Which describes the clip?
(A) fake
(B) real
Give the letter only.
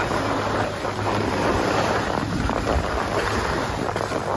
B